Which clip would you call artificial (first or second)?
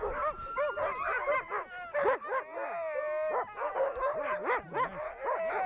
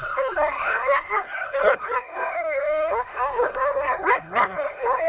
second